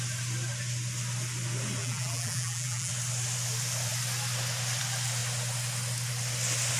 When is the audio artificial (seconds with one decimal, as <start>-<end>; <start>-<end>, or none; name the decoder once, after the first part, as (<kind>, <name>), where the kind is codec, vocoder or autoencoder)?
1.8-2.9 (vocoder, BigVGAN v2)